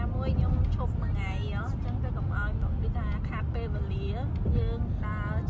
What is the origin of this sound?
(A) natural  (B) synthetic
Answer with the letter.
A